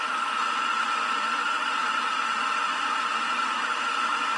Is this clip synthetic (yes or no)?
yes